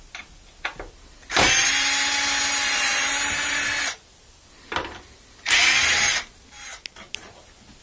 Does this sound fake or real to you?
real